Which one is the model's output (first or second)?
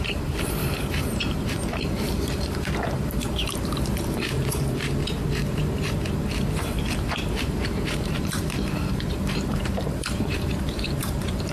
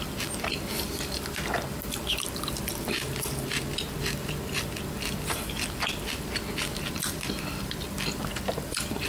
first